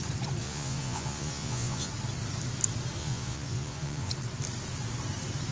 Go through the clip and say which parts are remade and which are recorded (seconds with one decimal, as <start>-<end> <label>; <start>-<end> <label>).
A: 0.0-0.4 recorded; 0.4-1.9 remade; 1.9-3.0 recorded; 3.0-4.1 remade; 4.1-5.5 recorded

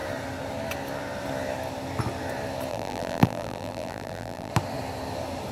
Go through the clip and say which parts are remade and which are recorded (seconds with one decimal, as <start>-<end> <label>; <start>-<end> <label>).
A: 0.0-2.7 recorded; 2.7-4.5 remade; 4.5-5.5 recorded

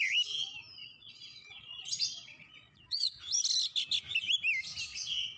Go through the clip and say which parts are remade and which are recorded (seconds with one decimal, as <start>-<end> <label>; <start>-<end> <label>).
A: 0.0-0.8 recorded; 0.8-3.2 remade; 3.2-4.9 recorded; 4.9-5.4 remade

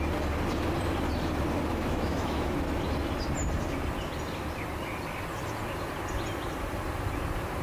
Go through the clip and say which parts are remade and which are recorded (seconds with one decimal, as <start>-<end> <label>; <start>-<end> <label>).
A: 0.0-1.7 recorded; 1.7-2.5 remade; 2.5-7.6 recorded

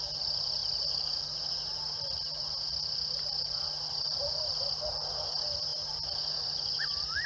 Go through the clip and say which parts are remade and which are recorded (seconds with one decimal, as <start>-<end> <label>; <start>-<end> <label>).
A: 0.0-0.6 recorded; 0.6-1.2 remade; 1.2-7.3 recorded

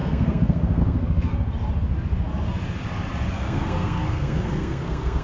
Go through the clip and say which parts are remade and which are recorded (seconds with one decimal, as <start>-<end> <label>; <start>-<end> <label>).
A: 0.0-1.3 remade; 1.3-3.3 recorded; 3.3-5.2 remade

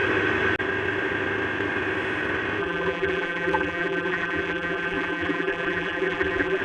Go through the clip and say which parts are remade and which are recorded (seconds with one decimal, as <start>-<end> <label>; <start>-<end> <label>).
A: 0.0-2.6 recorded; 2.6-6.6 remade